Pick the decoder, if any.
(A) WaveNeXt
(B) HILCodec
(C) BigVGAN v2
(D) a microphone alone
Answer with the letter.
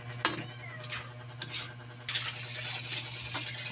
D